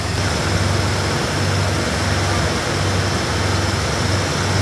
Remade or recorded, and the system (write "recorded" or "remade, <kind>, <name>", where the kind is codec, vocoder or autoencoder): recorded